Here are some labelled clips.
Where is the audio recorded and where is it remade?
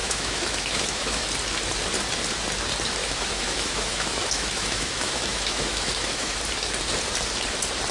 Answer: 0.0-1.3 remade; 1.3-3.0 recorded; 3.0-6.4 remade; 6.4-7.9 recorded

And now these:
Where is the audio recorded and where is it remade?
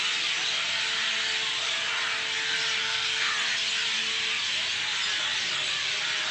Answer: 0.0-2.8 recorded; 2.8-3.3 remade; 3.3-6.3 recorded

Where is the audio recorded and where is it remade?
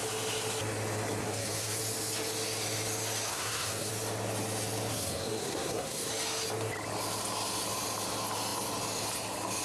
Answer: 0.0-1.2 recorded; 1.2-1.8 remade; 1.8-3.3 recorded; 3.3-3.9 remade; 3.9-4.9 recorded; 4.9-6.1 remade; 6.1-9.6 recorded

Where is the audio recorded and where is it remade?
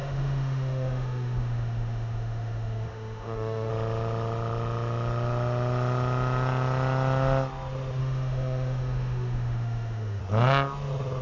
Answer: 0.0-3.7 remade; 3.7-8.0 recorded; 8.0-10.2 remade; 10.2-11.2 recorded